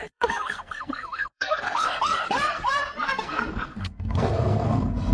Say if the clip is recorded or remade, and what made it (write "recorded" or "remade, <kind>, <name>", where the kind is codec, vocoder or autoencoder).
remade, codec, SNAC